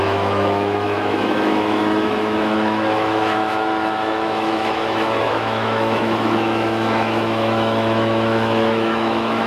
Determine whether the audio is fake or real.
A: fake